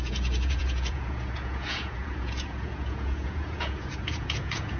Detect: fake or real fake